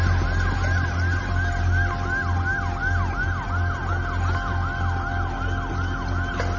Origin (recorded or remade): recorded